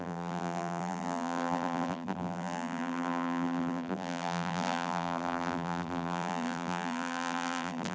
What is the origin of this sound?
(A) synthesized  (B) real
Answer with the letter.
A